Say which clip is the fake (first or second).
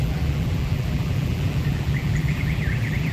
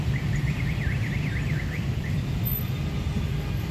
first